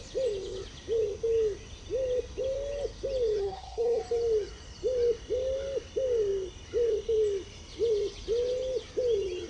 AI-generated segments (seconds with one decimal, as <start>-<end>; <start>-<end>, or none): 3.4-4.0